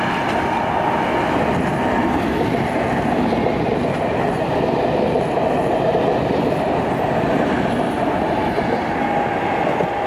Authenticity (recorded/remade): recorded